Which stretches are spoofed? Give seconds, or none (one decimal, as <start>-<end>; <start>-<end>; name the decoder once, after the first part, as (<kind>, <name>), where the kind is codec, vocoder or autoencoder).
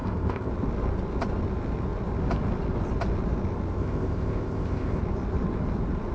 0.0-0.5 (codec, ZipCodec); 3.8-5.0